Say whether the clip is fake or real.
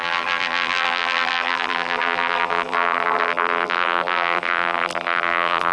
fake